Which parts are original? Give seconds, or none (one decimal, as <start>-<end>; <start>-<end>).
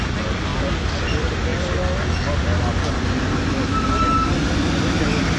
0.0-5.4